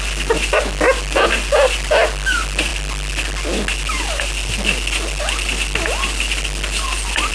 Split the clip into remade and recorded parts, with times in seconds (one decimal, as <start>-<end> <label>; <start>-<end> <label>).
0.0-7.3 recorded